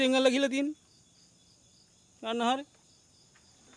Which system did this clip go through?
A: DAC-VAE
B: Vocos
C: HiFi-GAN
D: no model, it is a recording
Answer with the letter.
D